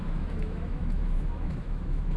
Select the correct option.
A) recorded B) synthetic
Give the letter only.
B